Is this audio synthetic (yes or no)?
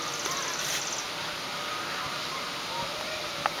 yes